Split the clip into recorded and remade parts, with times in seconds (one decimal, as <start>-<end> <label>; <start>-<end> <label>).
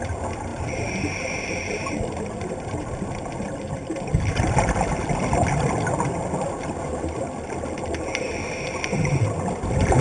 0.0-10.0 recorded